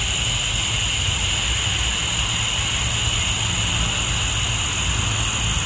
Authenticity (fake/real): real